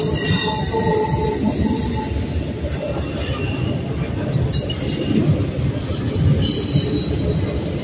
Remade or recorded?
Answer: recorded